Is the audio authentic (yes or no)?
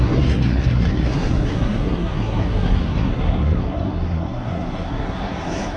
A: no